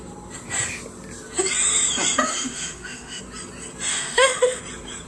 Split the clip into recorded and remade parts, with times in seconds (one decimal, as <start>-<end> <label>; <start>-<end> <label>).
0.0-2.3 recorded; 2.3-3.2 remade; 3.2-3.9 recorded; 3.9-4.6 remade; 4.6-5.1 recorded